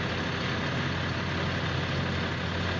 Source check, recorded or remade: recorded